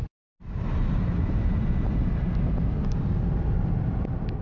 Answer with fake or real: real